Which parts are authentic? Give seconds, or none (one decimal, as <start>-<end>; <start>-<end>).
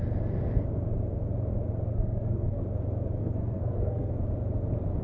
0.0-1.9; 2.6-3.2; 4.1-5.0